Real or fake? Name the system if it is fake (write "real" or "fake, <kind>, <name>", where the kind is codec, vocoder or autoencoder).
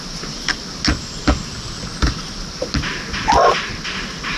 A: real